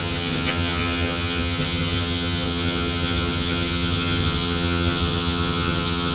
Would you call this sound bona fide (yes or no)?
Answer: no